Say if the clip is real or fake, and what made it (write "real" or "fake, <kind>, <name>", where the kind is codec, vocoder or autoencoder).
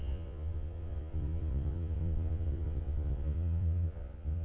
fake, vocoder, Vocos